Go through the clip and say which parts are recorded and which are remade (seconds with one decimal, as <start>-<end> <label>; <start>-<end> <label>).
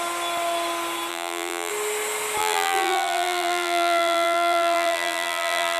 0.0-1.1 recorded; 1.1-1.7 remade; 1.7-2.4 recorded; 2.4-5.8 remade